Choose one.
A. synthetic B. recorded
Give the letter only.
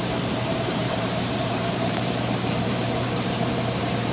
A